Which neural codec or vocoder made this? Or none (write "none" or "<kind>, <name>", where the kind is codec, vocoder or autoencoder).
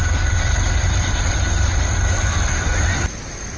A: vocoder, BigVGAN v2